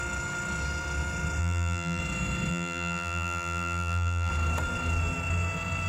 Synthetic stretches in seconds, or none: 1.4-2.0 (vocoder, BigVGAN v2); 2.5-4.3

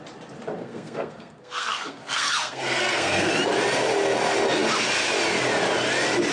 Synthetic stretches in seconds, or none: 0.6-3.3 (codec, SNAC)